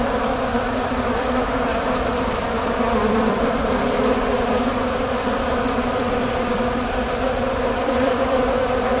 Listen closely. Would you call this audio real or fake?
fake